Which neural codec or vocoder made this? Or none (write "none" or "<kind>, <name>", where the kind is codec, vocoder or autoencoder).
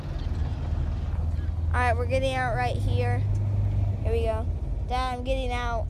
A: none